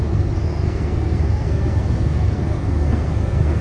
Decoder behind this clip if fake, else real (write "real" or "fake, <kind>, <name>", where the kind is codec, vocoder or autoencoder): fake, codec, SNAC